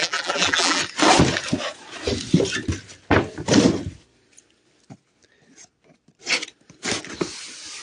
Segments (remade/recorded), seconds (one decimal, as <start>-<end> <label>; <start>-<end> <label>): 0.0-0.8 remade; 0.8-7.8 recorded